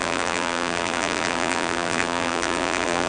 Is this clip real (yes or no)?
no